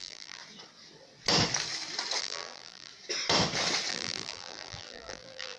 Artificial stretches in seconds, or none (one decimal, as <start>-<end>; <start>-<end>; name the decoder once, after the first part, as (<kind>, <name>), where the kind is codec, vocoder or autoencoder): 0.0-0.4 (vocoder, BigVGAN v2); 2.2-2.9; 3.9-5.6